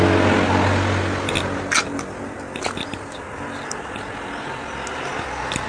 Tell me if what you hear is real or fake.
real